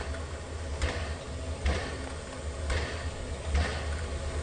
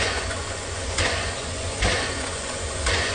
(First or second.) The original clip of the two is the first